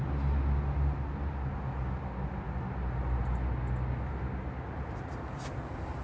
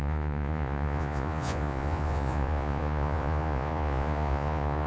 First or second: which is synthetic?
second